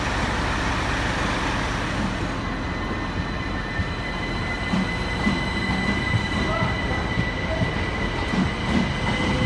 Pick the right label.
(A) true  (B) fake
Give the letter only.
A